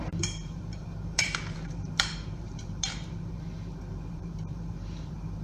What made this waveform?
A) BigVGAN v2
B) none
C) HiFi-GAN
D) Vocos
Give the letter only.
A